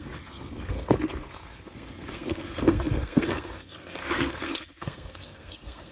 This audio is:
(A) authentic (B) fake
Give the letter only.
B